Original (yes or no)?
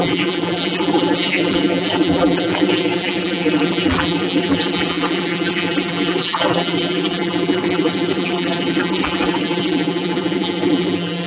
no